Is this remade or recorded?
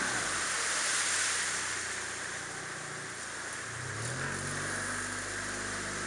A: recorded